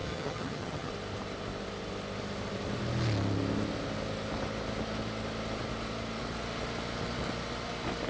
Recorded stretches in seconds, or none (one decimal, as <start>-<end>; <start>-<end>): 0.9-8.1